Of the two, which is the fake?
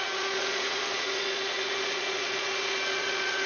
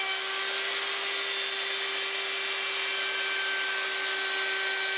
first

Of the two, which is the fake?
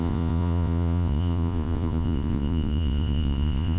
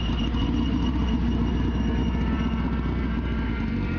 first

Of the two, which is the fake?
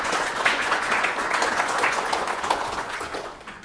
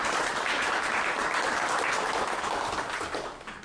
first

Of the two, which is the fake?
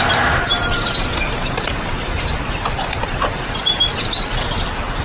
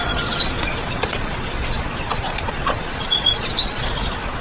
second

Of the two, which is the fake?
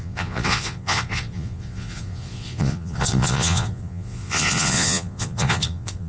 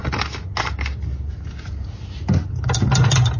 first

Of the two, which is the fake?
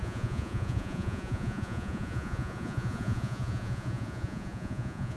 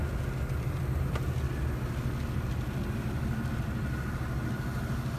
first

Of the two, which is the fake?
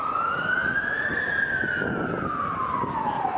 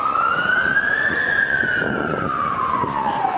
second